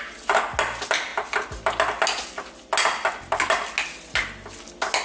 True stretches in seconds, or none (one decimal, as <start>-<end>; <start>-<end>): 0.0-5.0